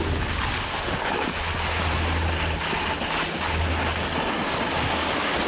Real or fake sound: real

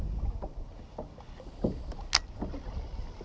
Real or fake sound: real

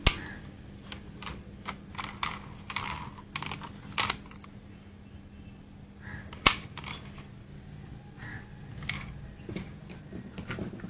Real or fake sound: real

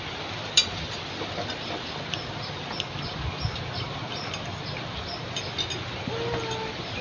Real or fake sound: real